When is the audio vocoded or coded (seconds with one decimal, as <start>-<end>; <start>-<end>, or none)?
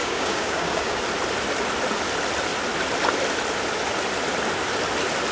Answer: 0.0-1.0